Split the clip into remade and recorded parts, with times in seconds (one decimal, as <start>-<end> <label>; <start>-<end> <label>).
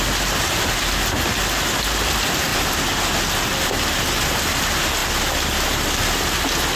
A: 0.0-6.8 recorded